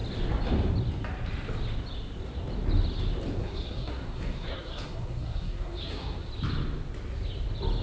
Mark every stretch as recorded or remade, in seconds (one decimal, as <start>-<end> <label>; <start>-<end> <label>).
0.0-3.4 recorded; 3.4-6.3 remade; 6.3-7.8 recorded